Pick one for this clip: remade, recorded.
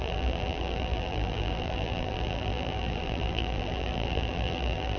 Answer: remade